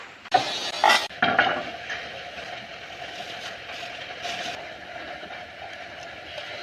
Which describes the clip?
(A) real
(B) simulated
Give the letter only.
A